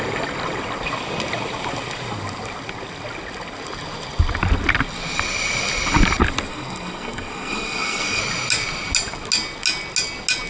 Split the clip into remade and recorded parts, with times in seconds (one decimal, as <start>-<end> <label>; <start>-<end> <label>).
0.0-6.5 recorded; 6.5-8.2 remade; 8.2-10.5 recorded